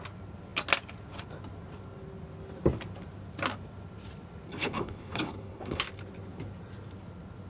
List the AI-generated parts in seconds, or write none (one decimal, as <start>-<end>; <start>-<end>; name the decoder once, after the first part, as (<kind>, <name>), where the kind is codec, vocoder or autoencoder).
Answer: 4.5-5.8 (codec, HILCodec)